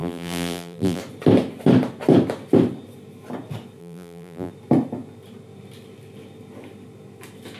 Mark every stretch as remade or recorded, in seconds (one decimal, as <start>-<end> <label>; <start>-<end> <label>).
0.0-1.0 remade; 1.0-3.8 recorded; 3.8-4.5 remade; 4.5-7.6 recorded